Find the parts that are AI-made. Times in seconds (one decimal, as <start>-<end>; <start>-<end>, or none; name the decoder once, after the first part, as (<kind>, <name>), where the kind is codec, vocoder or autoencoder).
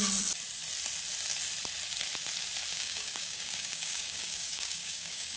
2.7-5.4 (codec, DAC)